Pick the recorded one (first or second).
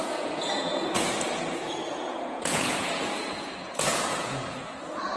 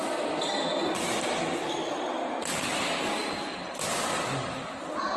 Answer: second